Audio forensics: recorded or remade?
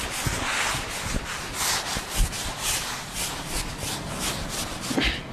recorded